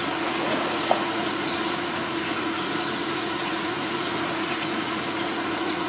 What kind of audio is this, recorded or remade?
remade